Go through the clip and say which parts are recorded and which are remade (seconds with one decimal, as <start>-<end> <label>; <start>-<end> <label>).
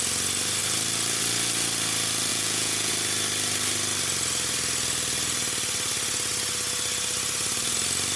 0.0-2.3 recorded; 2.3-2.9 remade; 2.9-8.2 recorded